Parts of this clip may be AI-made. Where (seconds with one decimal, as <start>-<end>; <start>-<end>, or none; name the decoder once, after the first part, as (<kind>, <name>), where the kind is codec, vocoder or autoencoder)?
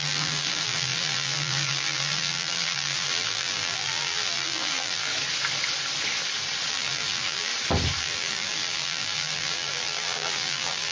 0.0-5.1 (vocoder, BigVGAN v2); 6.7-7.5; 8.0-10.9